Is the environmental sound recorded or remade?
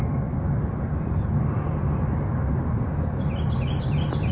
recorded